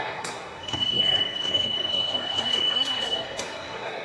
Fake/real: fake